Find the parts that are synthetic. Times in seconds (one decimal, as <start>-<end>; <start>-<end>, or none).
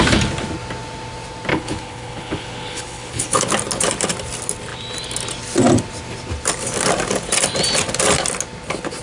1.5-3.5